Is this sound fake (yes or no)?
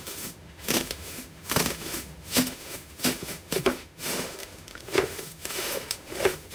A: yes